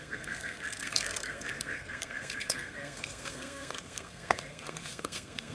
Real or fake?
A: fake